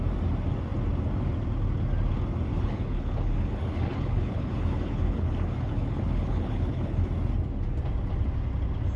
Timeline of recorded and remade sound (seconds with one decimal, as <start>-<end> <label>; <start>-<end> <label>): 0.0-2.5 recorded; 2.5-7.1 remade; 7.1-9.0 recorded